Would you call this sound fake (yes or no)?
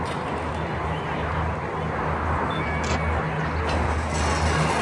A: no